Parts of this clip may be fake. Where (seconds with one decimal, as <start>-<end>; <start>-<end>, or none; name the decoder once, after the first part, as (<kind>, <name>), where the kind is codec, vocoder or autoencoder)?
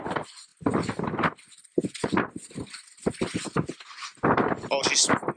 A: none